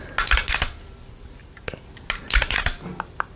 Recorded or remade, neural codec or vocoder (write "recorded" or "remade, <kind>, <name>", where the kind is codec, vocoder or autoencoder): recorded